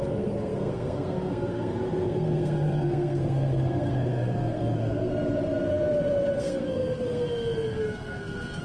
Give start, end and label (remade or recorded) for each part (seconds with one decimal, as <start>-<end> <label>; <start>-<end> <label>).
0.0-5.1 remade; 5.1-6.4 recorded; 6.4-8.6 remade